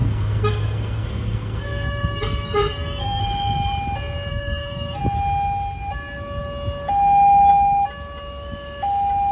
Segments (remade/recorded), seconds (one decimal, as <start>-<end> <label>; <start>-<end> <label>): 0.0-3.2 remade; 3.2-4.3 recorded; 4.3-5.0 remade; 5.0-9.3 recorded